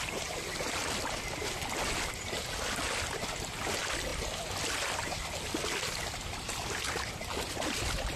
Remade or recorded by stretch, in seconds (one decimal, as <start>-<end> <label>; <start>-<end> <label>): 0.0-8.2 recorded

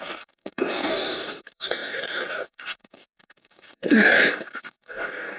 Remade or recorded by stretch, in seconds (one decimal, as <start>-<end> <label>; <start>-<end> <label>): 0.0-5.4 remade

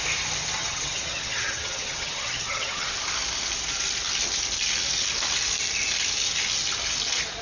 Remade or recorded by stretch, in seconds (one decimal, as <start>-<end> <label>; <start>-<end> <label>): 0.0-0.6 recorded; 0.6-2.9 remade; 2.9-7.4 recorded

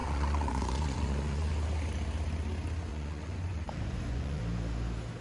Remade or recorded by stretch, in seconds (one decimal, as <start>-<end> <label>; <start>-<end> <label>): 0.0-1.5 remade; 1.5-2.9 recorded; 2.9-4.4 remade; 4.4-5.2 recorded

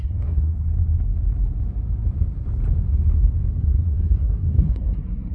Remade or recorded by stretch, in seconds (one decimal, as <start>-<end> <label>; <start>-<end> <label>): 0.0-0.5 remade; 0.5-3.6 recorded; 3.6-5.3 remade

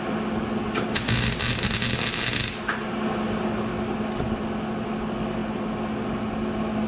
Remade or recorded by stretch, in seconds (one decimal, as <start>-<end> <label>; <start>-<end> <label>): 0.0-6.9 recorded

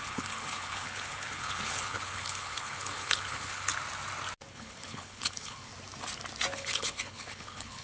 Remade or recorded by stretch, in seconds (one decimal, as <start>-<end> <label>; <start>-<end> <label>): 0.0-3.7 remade; 3.7-4.5 recorded; 4.5-5.7 remade; 5.7-6.5 recorded; 6.5-7.8 remade

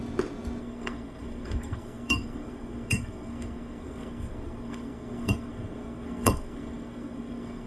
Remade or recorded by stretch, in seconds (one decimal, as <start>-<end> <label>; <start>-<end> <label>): 0.0-0.6 recorded; 0.6-7.7 remade